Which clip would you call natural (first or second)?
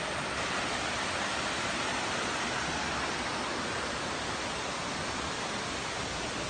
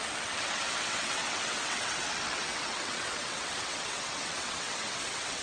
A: first